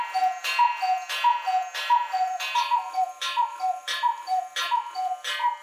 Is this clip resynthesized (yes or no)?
no